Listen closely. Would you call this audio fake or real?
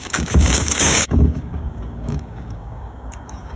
fake